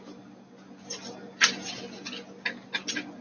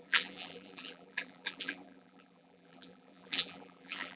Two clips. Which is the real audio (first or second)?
first